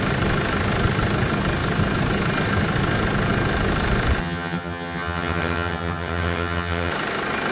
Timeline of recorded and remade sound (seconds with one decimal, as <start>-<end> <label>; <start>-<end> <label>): 0.0-4.2 recorded; 4.2-6.9 remade; 6.9-7.5 recorded